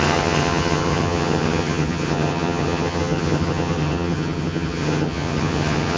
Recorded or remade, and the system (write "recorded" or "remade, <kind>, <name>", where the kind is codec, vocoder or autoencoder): remade, vocoder, HiFi-GAN